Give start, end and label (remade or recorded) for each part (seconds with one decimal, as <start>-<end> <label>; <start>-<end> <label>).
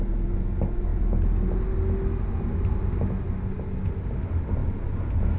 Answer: 0.0-5.4 recorded